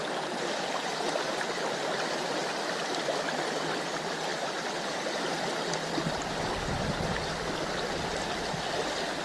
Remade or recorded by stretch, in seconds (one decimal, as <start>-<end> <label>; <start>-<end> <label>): 0.0-9.2 recorded